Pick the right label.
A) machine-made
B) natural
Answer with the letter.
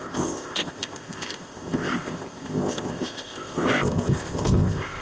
A